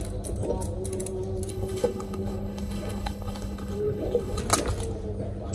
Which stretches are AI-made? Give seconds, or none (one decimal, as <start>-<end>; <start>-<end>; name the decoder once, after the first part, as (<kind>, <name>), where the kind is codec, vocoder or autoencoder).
1.5-4.4 (codec, HILCodec)